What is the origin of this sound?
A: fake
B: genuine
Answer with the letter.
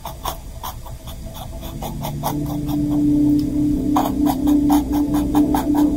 B